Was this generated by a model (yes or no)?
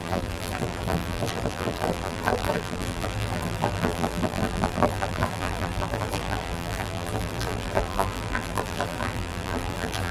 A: yes